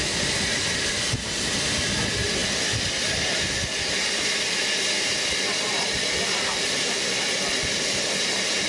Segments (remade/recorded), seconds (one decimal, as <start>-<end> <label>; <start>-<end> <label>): 0.0-2.4 recorded; 2.4-7.4 remade; 7.4-8.7 recorded